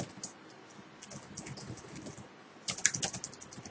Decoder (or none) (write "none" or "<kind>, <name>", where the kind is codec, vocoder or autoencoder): none